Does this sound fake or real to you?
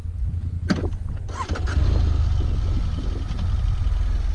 real